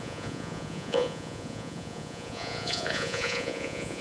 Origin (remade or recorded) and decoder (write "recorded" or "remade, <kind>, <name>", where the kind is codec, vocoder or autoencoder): remade, vocoder, Vocos